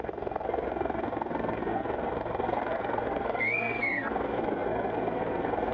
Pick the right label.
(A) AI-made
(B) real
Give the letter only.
A